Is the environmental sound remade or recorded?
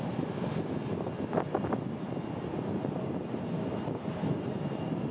recorded